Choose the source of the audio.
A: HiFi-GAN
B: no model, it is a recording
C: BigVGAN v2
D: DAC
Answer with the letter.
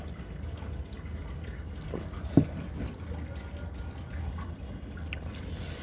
B